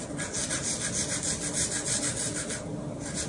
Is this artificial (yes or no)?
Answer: no